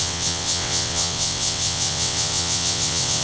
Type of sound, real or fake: fake